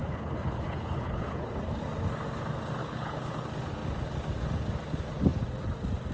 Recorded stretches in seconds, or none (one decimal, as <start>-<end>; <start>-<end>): 1.5-2.8; 3.4-6.1